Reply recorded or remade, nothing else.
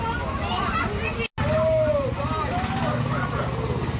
recorded